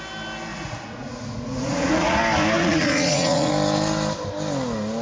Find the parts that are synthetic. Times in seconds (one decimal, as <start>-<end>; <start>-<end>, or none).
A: 0.5-2.2; 2.6-3.5